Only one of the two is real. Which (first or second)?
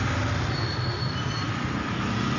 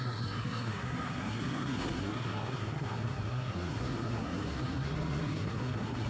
first